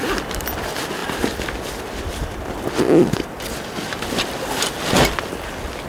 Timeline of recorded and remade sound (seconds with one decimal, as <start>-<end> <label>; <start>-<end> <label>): 0.0-5.9 recorded